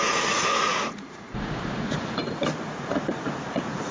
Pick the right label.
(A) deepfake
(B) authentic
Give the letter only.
A